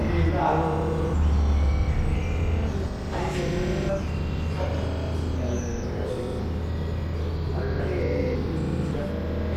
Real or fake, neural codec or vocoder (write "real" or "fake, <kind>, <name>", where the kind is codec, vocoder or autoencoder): real